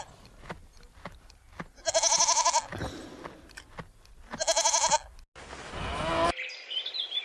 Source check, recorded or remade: recorded